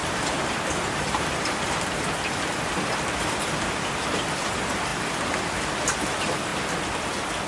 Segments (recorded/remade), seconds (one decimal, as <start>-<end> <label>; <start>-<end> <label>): 0.0-4.5 remade; 4.5-7.5 recorded